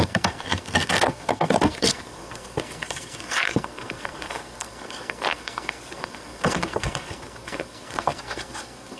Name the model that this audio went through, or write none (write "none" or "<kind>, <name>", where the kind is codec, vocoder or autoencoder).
codec, SNAC